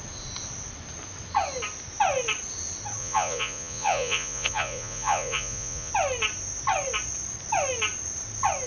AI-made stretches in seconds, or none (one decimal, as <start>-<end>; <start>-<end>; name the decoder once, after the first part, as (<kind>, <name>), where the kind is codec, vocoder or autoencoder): 3.0-5.9 (vocoder, Vocos)